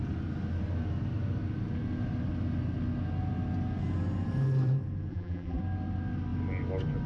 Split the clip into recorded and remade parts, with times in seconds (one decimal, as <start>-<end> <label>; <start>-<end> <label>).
0.0-5.1 recorded; 5.1-5.6 remade; 5.6-7.1 recorded